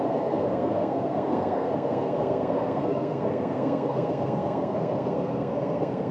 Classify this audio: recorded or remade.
remade